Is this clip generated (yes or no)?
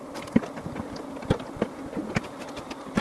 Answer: no